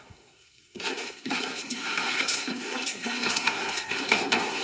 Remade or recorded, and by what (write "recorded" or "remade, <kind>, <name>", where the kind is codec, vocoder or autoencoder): remade, codec, SNAC